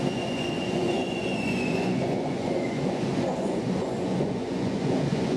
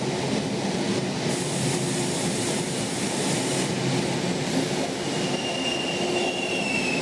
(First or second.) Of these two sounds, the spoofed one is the first